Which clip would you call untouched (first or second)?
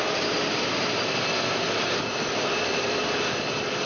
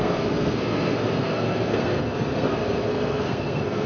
first